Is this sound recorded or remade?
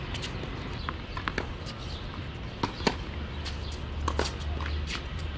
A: recorded